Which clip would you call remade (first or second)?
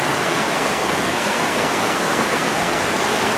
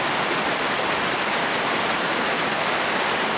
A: first